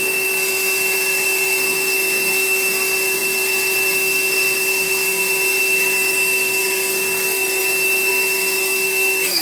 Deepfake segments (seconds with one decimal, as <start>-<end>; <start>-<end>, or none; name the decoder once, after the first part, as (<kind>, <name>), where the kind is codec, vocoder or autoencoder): 0.0-9.4 (codec, SNAC)